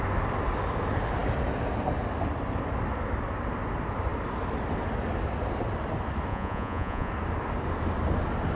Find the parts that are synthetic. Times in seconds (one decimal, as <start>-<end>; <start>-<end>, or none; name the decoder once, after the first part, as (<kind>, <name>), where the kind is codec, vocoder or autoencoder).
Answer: 6.3-7.1 (vocoder, Vocos)